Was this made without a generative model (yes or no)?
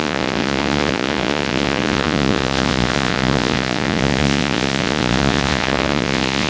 no